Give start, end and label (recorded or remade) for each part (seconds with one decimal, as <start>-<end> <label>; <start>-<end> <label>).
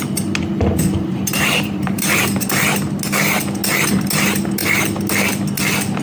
0.0-0.5 recorded; 0.5-2.5 remade; 2.5-6.0 recorded